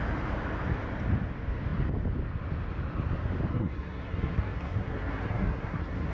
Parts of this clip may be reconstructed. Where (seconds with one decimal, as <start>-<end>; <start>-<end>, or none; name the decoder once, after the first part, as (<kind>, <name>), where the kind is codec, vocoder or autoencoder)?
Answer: 3.5-6.1 (codec, SNAC)